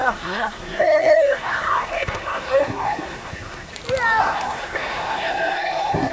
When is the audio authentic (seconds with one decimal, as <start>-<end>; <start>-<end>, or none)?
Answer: 3.7-4.2